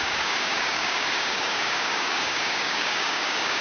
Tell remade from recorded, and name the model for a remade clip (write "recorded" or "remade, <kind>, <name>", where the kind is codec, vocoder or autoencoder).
remade, codec, DAC